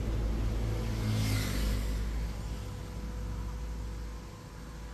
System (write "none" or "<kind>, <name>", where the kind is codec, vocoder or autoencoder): none